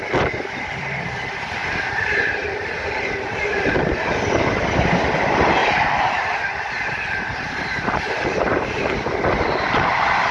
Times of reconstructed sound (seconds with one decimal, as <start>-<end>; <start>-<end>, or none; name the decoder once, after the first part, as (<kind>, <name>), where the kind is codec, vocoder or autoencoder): 1.6-3.5 (vocoder, BigVGAN v2); 5.6-8.9